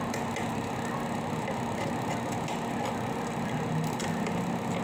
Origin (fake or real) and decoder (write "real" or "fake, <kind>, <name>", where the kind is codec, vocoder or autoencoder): real